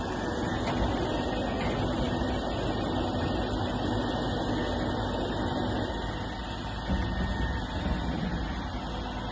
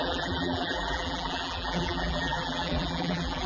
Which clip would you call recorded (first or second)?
first